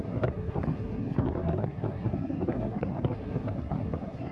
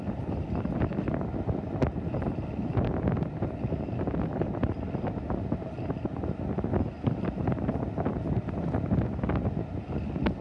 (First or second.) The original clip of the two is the second